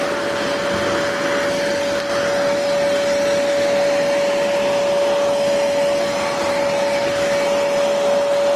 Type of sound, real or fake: real